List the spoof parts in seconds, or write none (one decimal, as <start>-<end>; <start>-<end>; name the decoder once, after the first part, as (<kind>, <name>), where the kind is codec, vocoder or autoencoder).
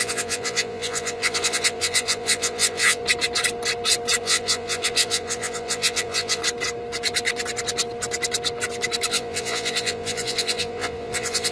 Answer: 0.0-3.0 (vocoder, Vocos); 4.2-6.4; 9.1-11.5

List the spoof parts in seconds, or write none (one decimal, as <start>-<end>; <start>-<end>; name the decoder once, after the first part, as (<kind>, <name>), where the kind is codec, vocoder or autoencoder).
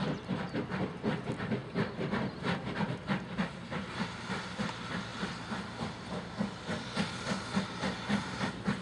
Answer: none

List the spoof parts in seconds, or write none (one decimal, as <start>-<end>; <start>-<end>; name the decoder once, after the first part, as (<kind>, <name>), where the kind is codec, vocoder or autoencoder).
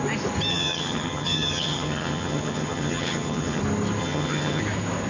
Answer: 0.5-3.6 (vocoder, HiFi-GAN); 4.0-4.6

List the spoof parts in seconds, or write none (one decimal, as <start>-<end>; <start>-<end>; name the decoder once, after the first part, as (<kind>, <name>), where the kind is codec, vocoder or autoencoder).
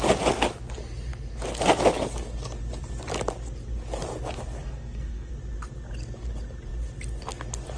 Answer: 4.6-5.3 (codec, SNAC)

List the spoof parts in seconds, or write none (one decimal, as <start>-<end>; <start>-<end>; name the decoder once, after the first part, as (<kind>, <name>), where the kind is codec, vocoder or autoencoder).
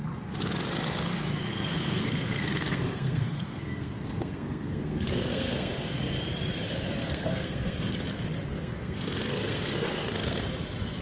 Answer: 1.5-6.0 (codec, SNAC); 7.0-8.0; 8.5-10.4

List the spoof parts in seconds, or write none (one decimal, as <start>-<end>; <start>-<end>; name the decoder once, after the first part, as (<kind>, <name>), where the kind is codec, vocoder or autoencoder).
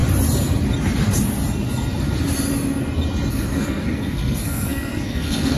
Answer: 3.3-5.6 (codec, SNAC)